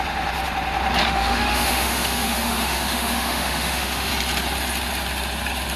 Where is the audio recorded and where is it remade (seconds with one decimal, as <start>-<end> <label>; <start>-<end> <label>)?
0.0-1.0 recorded; 1.0-4.1 remade; 4.1-5.8 recorded